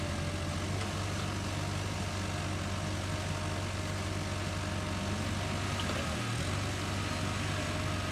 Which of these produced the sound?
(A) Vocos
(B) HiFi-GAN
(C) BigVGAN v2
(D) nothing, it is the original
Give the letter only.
D